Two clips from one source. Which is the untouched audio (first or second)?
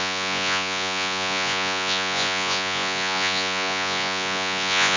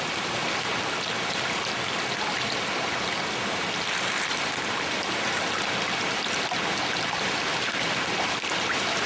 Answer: second